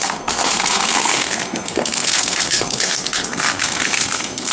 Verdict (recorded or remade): remade